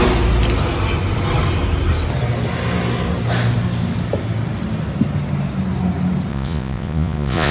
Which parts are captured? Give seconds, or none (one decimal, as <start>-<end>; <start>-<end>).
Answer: 0.0-6.3